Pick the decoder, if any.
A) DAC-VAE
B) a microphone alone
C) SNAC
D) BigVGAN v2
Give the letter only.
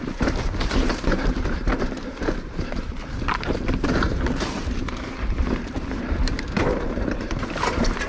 D